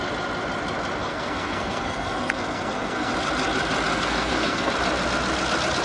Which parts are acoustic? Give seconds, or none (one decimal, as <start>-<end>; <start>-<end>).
0.0-1.0; 3.1-3.9; 4.7-5.8